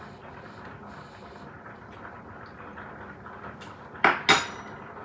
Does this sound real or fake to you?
real